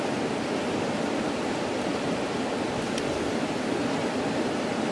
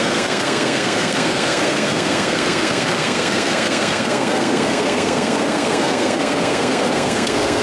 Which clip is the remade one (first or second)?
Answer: second